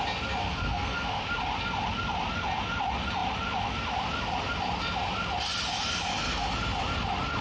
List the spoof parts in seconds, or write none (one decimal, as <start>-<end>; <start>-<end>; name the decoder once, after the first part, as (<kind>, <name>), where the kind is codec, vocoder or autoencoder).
0.4-1.2 (codec, SNAC)